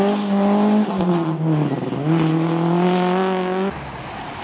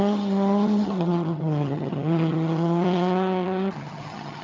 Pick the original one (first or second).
first